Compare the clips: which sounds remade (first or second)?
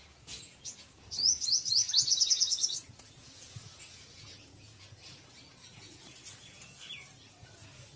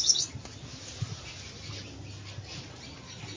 first